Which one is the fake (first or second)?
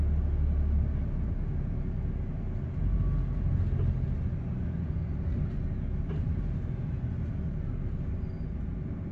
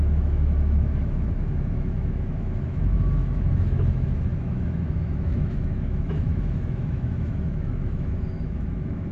second